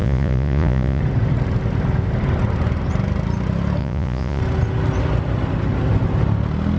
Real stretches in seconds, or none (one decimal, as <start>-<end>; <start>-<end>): 1.0-3.8; 4.4-6.8